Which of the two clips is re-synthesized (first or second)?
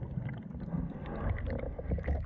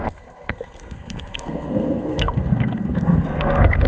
second